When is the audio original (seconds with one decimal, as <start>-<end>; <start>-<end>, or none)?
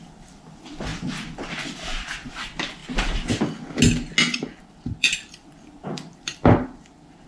2.8-4.6